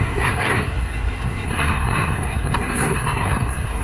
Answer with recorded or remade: remade